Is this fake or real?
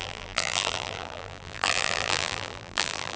fake